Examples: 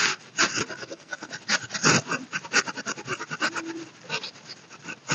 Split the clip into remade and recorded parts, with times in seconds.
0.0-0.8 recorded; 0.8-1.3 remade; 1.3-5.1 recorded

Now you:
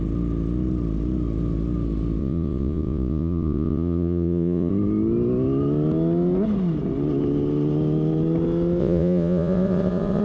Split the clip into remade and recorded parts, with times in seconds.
0.0-2.2 recorded; 2.2-4.7 remade; 4.7-8.8 recorded; 8.8-10.2 remade

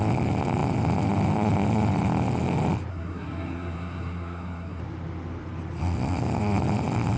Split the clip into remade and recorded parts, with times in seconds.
0.0-2.9 recorded; 2.9-4.8 remade; 4.8-7.2 recorded

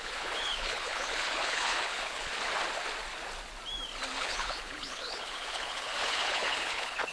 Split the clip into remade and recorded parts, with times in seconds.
0.0-2.3 remade; 2.3-4.2 recorded; 4.2-7.1 remade

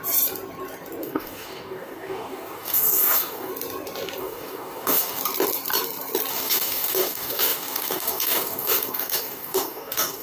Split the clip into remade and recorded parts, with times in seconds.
0.0-1.0 recorded; 1.0-3.5 remade; 3.5-4.2 recorded; 4.2-5.2 remade; 5.2-6.3 recorded; 6.3-10.2 remade

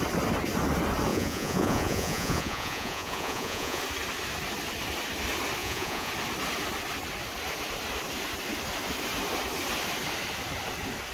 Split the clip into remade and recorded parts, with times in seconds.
0.0-1.1 recorded; 1.1-3.8 remade; 3.8-5.6 recorded; 5.6-6.1 remade; 6.1-11.1 recorded

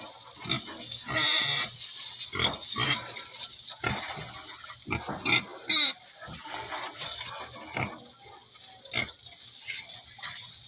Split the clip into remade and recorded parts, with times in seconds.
0.0-10.7 recorded

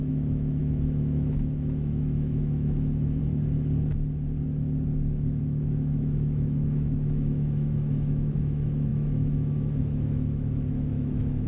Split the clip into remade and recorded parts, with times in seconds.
0.0-3.2 remade; 3.2-5.4 recorded; 5.4-11.5 remade